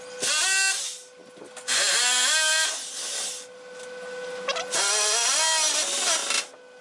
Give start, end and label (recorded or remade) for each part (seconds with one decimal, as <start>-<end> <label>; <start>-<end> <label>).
0.0-6.8 recorded